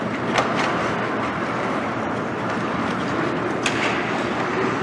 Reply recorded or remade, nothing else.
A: recorded